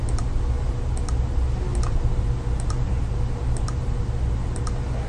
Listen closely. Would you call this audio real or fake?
real